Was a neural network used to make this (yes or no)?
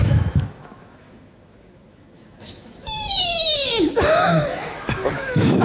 yes